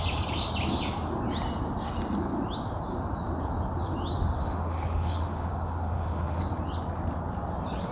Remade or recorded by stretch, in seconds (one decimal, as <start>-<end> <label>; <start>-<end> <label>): 0.0-4.4 recorded; 4.4-6.4 remade; 6.4-7.9 recorded